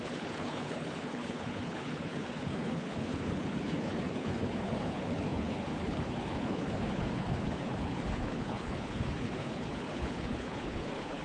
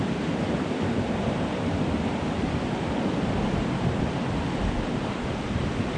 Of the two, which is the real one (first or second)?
second